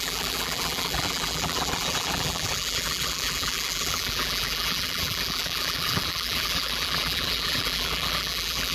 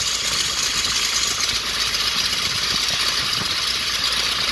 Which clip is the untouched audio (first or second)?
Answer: second